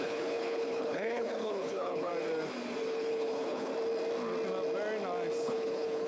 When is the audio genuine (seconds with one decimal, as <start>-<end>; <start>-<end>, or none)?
2.1-2.8; 3.7-5.4